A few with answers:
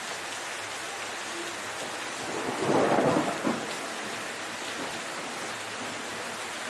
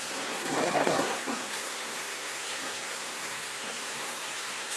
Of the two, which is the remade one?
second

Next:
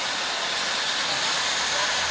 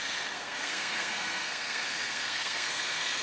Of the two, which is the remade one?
second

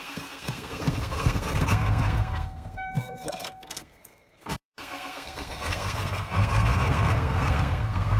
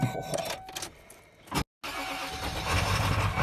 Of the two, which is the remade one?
first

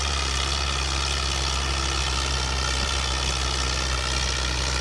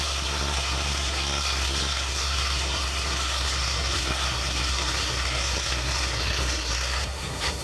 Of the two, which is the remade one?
second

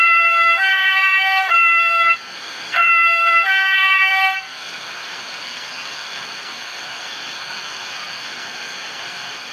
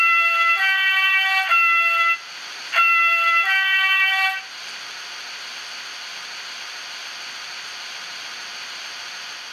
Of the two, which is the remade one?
first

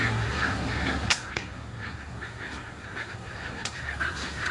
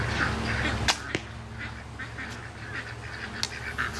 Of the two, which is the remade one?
first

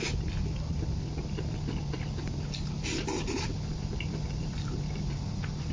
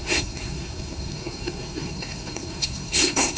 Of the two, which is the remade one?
second